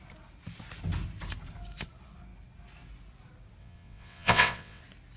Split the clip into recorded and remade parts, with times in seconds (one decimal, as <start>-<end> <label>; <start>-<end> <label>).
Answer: 0.0-3.6 recorded; 3.6-4.8 remade; 4.8-5.2 recorded